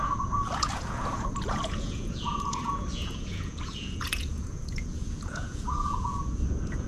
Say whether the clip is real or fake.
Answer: fake